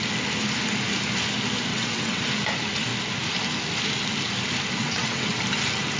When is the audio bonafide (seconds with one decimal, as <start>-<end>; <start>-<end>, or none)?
0.0-1.7; 2.2-4.8; 5.4-6.0